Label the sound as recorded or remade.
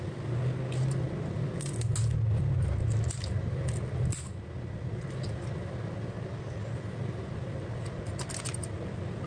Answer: recorded